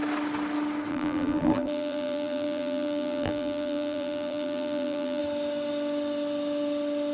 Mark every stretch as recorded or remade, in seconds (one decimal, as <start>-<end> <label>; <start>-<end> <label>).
0.0-0.9 recorded; 0.9-5.2 remade; 5.2-7.1 recorded